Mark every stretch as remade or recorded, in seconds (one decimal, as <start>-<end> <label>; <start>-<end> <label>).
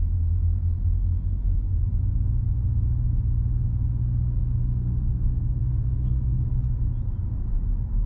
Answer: 0.0-4.6 recorded; 4.6-6.5 remade; 6.5-8.1 recorded